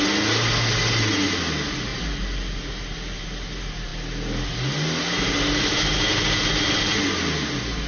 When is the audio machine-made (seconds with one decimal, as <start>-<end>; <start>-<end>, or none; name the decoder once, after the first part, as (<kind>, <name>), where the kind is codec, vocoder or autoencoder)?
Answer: none